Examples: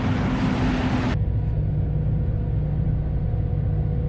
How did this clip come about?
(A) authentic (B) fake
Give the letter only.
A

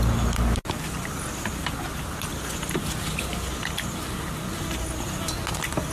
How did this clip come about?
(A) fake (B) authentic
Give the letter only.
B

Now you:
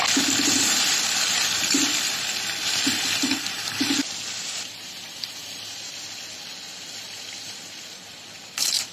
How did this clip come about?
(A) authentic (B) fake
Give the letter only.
B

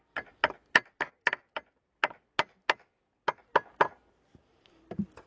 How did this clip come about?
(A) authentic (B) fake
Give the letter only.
A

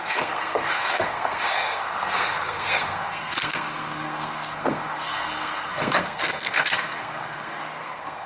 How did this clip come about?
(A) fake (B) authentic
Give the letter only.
A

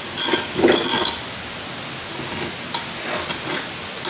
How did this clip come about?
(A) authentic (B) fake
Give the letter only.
A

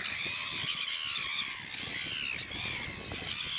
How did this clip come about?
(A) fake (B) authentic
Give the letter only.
B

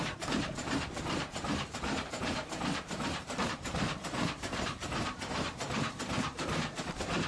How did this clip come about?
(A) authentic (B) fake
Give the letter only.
B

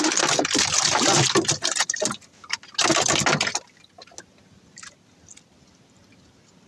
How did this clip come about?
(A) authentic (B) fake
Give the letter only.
A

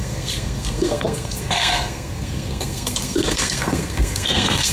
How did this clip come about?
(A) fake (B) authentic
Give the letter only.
A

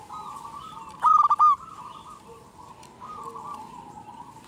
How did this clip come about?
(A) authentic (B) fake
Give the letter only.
A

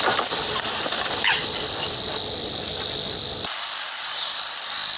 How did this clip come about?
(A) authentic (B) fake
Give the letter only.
B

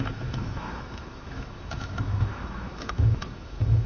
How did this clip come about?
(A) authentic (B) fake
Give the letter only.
B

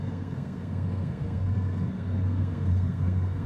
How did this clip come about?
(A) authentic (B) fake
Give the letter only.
B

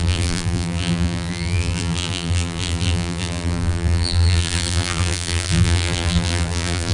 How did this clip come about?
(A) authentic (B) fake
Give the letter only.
B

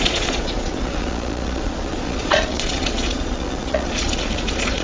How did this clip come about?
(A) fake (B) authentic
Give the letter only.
A